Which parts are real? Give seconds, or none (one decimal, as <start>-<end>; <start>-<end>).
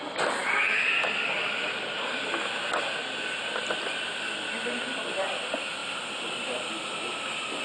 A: 0.0-7.6